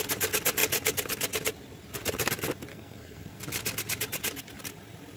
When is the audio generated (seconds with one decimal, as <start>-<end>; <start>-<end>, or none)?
2.7-3.4

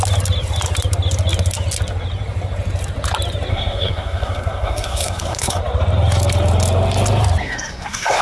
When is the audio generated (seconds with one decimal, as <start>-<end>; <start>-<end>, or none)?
3.5-5.6; 7.4-8.2

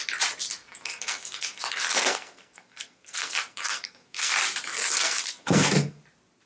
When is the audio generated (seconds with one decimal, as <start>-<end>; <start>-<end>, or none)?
0.6-4.3; 4.7-6.0

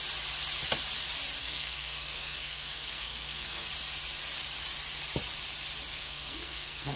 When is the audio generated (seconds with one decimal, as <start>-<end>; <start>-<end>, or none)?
1.4-3.7; 5.9-7.0

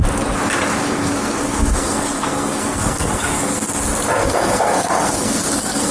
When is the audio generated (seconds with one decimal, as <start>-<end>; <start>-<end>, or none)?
0.8-3.8; 4.2-5.9

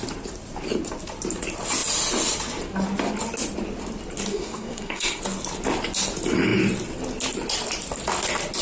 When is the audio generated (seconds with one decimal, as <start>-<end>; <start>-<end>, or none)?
4.3-5.2